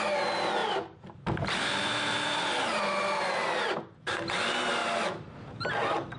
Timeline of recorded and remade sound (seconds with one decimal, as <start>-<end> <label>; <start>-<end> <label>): 0.0-6.2 recorded